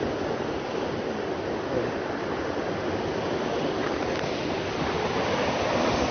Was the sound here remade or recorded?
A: recorded